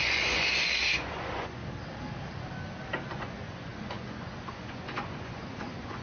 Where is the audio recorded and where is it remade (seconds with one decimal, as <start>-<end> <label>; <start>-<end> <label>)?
0.0-1.6 remade; 1.6-3.1 recorded; 3.1-6.0 remade